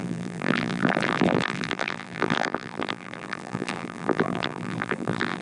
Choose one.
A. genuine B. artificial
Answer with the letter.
B